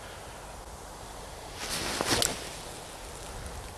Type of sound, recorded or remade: recorded